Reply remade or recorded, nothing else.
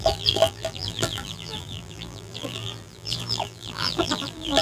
remade